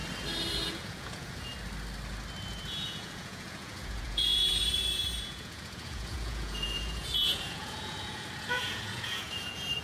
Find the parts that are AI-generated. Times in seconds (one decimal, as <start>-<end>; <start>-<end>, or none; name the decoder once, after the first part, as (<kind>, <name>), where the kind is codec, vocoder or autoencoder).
0.5-1.5 (vocoder, Vocos); 2.5-9.8